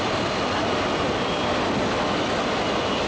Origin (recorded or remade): recorded